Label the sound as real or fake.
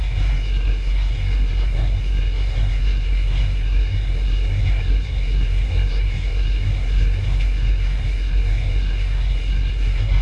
fake